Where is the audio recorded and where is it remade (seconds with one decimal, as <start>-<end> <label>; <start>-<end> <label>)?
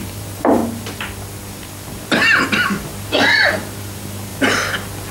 0.0-0.6 remade; 0.6-2.1 recorded; 2.1-4.3 remade; 4.3-5.1 recorded